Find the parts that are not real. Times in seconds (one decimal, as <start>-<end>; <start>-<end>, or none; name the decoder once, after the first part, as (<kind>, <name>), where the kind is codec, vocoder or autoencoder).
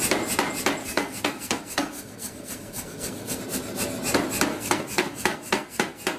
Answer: 0.8-3.4 (codec, SNAC); 4.5-6.2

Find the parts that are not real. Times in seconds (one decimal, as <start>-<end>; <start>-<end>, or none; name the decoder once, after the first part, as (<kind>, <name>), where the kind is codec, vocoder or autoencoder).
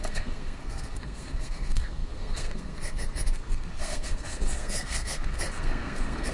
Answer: 0.0-6.3 (codec, SNAC)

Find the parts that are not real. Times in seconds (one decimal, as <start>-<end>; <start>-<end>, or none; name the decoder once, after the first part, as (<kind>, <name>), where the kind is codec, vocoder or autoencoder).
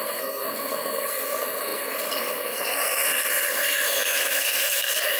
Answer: 0.0-5.2 (codec, SNAC)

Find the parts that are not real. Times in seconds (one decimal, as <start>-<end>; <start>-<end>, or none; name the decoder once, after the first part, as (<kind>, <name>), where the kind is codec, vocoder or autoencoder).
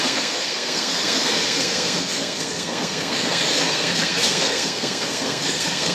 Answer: 0.0-5.9 (codec, SNAC)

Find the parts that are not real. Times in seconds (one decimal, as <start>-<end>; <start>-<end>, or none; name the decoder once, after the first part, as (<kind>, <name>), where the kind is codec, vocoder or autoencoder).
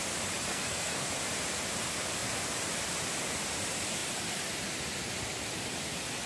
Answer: 0.5-1.1 (codec, SNAC)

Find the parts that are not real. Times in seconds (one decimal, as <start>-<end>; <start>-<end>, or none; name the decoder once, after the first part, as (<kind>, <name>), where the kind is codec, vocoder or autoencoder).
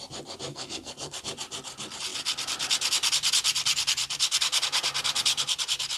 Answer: 0.5-1.2 (codec, SNAC)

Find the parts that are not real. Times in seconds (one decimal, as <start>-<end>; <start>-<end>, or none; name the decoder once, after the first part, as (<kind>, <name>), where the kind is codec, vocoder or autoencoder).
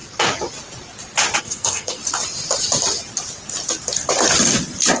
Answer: 1.4-2.0 (codec, SNAC)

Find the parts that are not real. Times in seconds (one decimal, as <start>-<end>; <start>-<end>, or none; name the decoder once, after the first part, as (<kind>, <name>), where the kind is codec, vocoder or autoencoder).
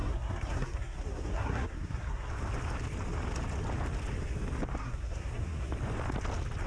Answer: 0.0-2.3 (codec, SNAC); 4.8-5.7